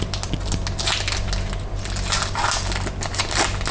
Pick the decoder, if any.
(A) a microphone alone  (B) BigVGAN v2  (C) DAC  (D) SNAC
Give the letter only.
A